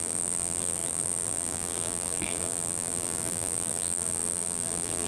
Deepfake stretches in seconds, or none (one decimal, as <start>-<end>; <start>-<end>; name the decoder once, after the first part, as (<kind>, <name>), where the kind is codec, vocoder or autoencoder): 0.0-5.1 (vocoder, BigVGAN v2)